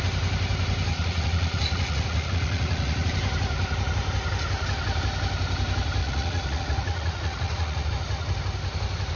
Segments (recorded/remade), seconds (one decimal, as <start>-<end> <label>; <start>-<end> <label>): 0.0-0.9 recorded; 0.9-3.1 remade; 3.1-6.0 recorded; 6.0-7.9 remade; 7.9-9.2 recorded

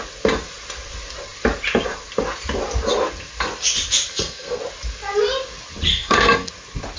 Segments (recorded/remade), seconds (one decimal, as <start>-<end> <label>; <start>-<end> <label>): 0.0-4.1 recorded; 4.1-4.6 remade; 4.6-5.9 recorded; 5.9-6.5 remade; 6.5-7.0 recorded

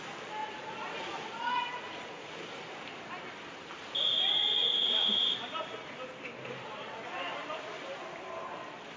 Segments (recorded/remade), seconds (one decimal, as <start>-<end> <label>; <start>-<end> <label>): 0.0-0.4 recorded; 0.4-2.3 remade; 2.3-9.0 recorded

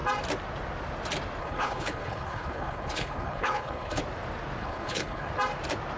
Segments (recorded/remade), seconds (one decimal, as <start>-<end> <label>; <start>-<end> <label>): 0.0-1.4 recorded; 1.4-4.0 remade; 4.0-4.6 recorded; 4.6-5.3 remade; 5.3-6.0 recorded

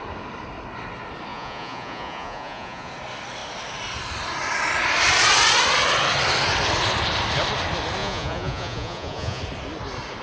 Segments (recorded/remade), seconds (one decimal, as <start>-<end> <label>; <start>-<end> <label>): 0.0-1.3 recorded; 1.3-2.9 remade; 2.9-8.0 recorded; 8.0-9.4 remade; 9.4-10.2 recorded

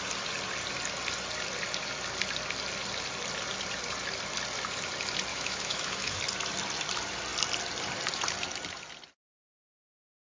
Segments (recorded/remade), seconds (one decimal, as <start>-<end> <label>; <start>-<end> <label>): 0.0-5.3 recorded; 5.3-6.2 remade; 6.2-10.2 recorded